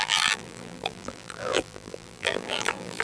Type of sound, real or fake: fake